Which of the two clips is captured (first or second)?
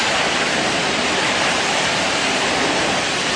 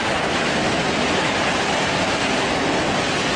second